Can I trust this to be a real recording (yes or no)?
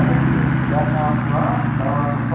yes